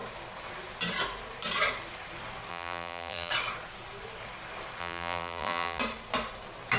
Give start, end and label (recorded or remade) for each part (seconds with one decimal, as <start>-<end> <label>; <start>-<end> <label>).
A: 0.0-2.5 recorded; 2.5-3.3 remade; 3.3-4.8 recorded; 4.8-5.8 remade; 5.8-6.8 recorded